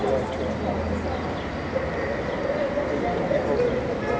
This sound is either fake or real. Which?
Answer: real